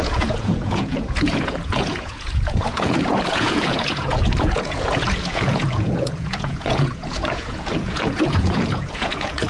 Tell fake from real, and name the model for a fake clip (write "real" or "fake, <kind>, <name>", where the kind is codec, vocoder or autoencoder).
fake, vocoder, Vocos